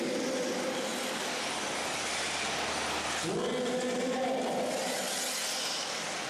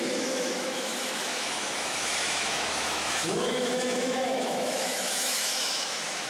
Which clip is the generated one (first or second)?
second